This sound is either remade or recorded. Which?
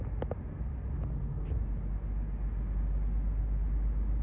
recorded